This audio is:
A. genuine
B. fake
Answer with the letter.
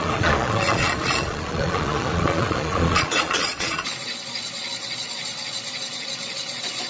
B